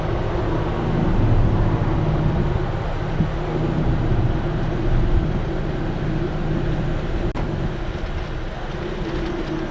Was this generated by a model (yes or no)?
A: no